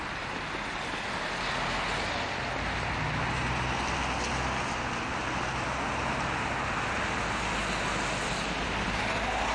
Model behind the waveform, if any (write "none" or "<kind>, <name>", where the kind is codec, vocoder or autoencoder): none